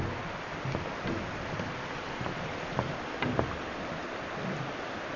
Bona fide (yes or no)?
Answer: yes